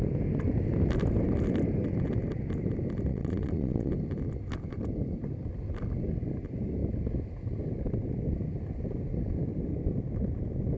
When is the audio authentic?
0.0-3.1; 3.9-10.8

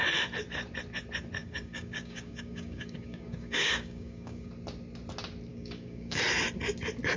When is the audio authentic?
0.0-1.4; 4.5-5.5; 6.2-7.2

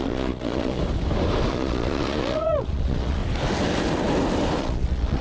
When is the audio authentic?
0.8-1.5; 3.2-4.6

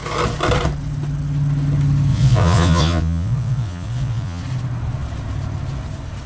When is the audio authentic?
0.0-2.1; 4.4-6.3

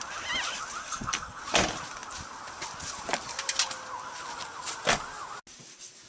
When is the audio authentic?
0.0-0.8; 1.4-6.1

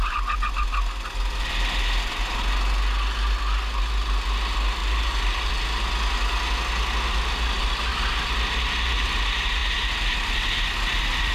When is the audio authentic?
0.0-4.8; 5.5-11.3